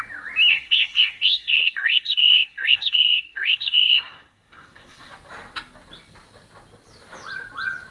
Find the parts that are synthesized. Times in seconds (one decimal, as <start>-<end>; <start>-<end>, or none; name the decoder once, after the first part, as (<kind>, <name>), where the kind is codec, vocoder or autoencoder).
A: 0.5-5.1 (codec, SNAC)